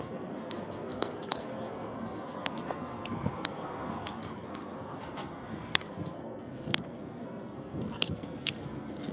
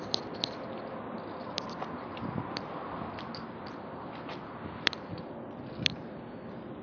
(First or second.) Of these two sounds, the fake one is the first